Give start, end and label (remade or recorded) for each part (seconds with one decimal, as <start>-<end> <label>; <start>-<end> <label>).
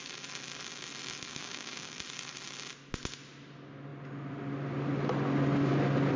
0.0-1.3 recorded; 1.3-1.9 remade; 1.9-6.2 recorded